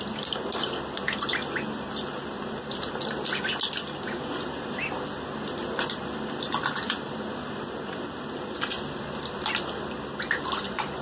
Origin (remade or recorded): recorded